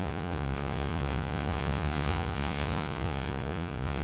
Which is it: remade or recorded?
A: remade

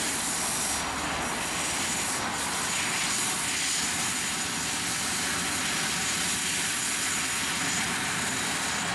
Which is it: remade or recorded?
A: recorded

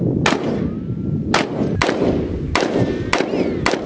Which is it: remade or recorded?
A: recorded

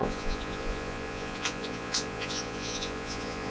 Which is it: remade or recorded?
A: remade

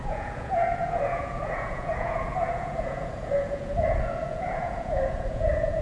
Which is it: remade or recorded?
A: remade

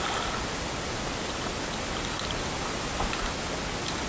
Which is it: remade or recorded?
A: recorded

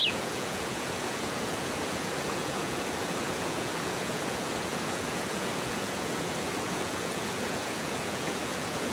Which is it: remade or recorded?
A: remade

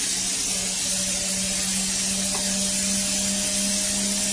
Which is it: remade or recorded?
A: recorded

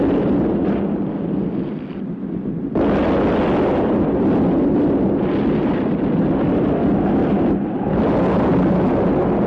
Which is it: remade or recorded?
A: recorded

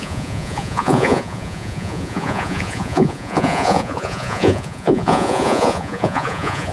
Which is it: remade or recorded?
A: remade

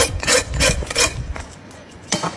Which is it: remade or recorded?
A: remade